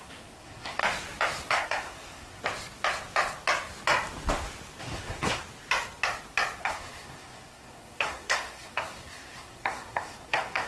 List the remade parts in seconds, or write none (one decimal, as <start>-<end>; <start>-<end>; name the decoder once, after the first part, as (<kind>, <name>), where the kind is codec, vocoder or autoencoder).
0.0-0.8 (codec, SNAC); 1.5-2.4; 4.8-5.4; 6.6-10.7